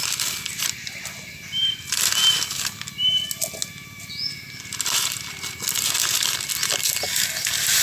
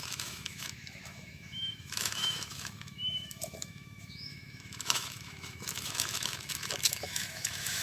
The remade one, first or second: second